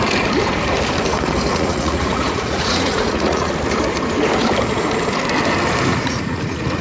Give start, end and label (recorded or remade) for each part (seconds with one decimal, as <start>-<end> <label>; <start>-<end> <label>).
0.0-1.5 recorded; 1.5-3.5 remade; 3.5-5.9 recorded; 5.9-6.8 remade